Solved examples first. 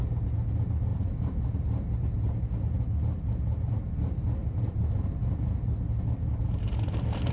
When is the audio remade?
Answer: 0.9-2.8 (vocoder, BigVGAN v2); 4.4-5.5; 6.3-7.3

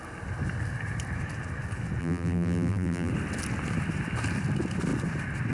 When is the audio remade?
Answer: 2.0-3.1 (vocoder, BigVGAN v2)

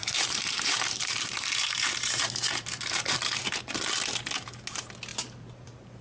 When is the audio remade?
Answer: 0.0-3.6 (vocoder, BigVGAN v2); 5.1-6.0

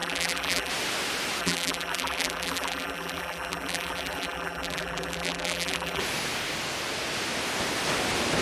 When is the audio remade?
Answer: 0.0-0.7 (vocoder, BigVGAN v2); 1.4-6.0

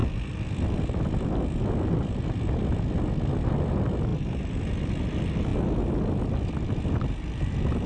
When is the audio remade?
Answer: 4.1-4.9 (vocoder, BigVGAN v2)